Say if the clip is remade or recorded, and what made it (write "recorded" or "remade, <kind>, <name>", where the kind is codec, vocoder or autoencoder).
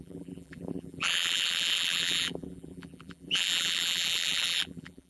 remade, vocoder, BigVGAN v2